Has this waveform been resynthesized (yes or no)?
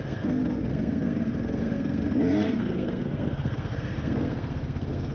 yes